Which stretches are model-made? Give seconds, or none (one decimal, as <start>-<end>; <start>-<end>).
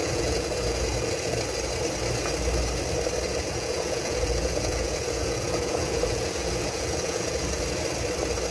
0.0-1.4; 3.3-7.6